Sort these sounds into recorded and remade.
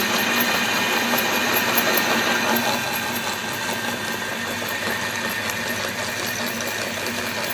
recorded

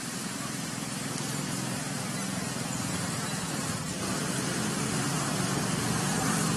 recorded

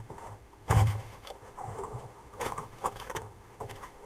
remade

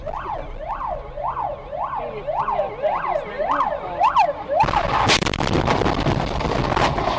recorded